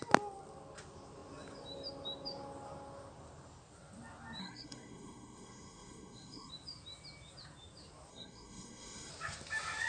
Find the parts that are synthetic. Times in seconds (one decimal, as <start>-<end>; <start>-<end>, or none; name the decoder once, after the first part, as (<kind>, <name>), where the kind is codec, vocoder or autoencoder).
4.4-6.5 (codec, SNAC); 8.1-9.1